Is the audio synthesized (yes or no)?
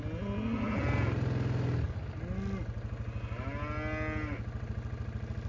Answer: no